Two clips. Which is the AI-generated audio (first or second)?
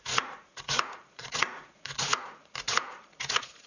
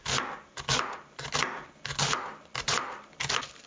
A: first